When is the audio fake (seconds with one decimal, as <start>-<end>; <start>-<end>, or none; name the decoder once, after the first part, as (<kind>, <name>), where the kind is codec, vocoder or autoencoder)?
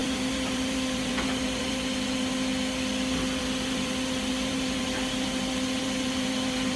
0.0-2.5 (vocoder, BigVGAN v2); 3.4-6.8